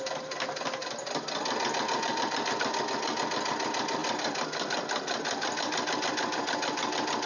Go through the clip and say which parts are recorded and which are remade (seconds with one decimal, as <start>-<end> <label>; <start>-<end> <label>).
0.0-7.3 recorded